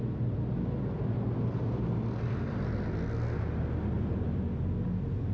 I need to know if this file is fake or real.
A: real